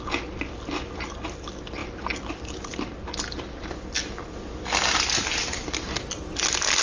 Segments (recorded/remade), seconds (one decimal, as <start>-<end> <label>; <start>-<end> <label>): 0.0-6.8 recorded